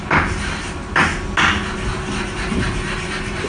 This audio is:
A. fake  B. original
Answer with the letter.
B